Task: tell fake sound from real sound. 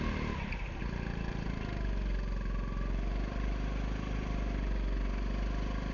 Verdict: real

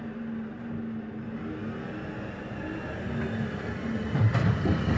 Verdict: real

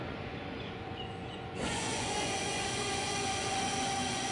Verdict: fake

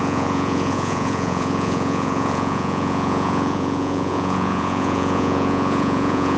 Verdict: fake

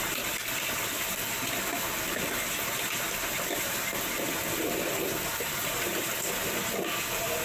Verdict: real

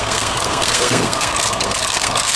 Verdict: fake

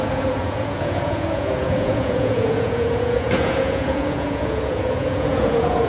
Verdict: fake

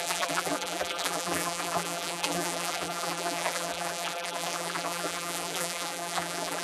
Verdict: fake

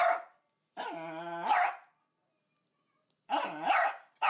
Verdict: real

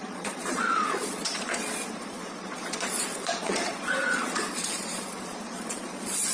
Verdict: fake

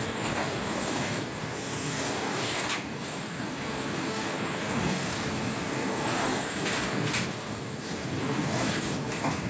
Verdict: fake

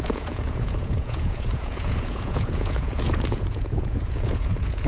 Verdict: fake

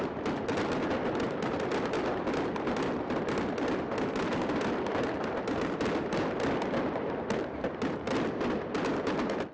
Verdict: fake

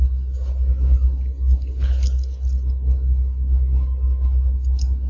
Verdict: real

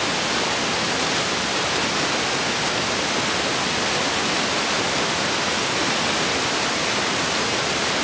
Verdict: real